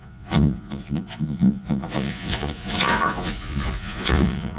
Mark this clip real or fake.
fake